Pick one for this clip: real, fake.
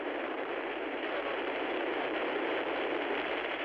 fake